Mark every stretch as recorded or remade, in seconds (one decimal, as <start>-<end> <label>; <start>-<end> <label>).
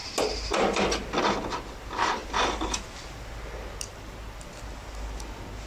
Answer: 0.0-5.7 recorded